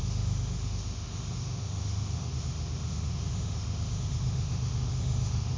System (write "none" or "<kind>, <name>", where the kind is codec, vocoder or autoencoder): autoencoder, DAC-VAE